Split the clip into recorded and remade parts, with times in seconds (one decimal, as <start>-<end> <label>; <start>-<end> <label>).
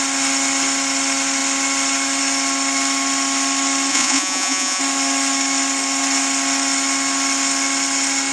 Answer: 0.0-3.9 recorded; 3.9-4.8 remade; 4.8-8.3 recorded